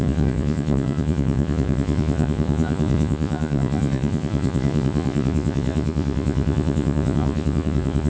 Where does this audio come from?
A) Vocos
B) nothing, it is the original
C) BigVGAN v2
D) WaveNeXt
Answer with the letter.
A